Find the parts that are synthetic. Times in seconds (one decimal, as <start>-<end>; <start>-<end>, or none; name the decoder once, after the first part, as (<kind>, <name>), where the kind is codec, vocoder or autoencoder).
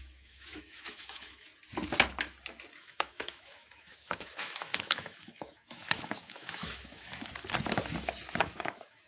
0.0-1.5 (autoencoder, DAC-VAE); 2.8-7.1; 8.4-9.1